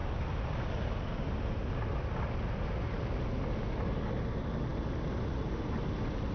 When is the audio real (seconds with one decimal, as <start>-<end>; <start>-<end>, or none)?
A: 0.0-6.3